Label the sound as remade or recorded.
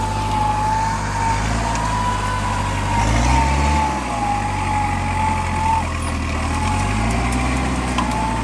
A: recorded